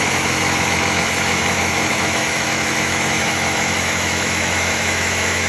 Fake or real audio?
fake